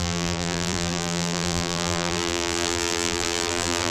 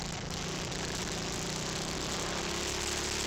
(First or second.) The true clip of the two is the second